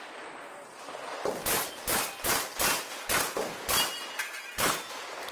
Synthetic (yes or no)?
no